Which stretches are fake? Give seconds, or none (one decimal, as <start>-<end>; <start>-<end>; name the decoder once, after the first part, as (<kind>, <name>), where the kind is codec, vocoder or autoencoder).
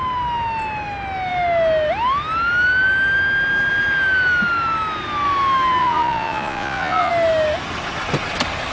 5.8-7.1 (vocoder, Vocos)